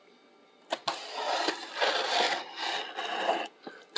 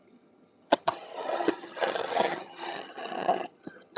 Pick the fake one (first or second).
second